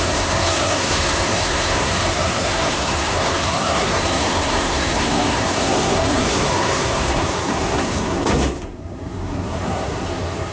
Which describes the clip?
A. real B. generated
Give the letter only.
B